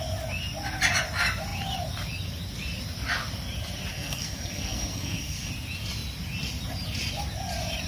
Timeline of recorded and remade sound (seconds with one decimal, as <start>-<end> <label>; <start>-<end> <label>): 0.0-3.9 recorded; 3.9-5.5 remade; 5.5-7.9 recorded